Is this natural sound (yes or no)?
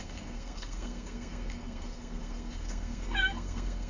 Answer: no